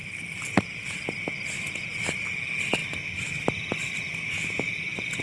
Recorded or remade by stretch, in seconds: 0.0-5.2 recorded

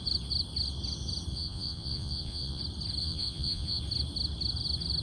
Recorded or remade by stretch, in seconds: 0.0-1.3 recorded; 1.3-2.6 remade; 2.6-3.0 recorded; 3.0-3.8 remade; 3.8-5.0 recorded

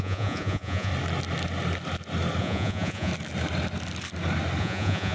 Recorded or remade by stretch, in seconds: 0.0-0.9 remade; 0.9-2.4 recorded; 2.4-3.1 remade; 3.1-4.6 recorded; 4.6-5.1 remade

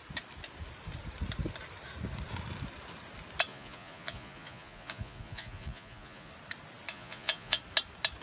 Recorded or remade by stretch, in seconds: 0.0-3.5 recorded; 3.5-6.3 remade; 6.3-6.9 recorded; 6.9-7.6 remade; 7.6-8.2 recorded

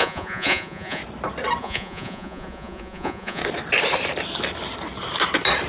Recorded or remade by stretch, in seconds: 0.0-1.0 remade; 1.0-1.6 recorded; 1.6-3.4 remade; 3.4-5.7 recorded

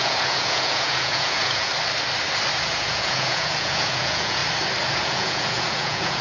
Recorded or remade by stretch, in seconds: 0.0-1.7 remade; 1.7-2.5 recorded; 2.5-4.4 remade; 4.4-4.9 recorded; 4.9-6.2 remade

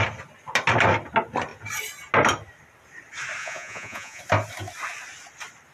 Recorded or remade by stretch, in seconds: 0.0-3.4 recorded; 3.4-4.2 remade; 4.2-5.7 recorded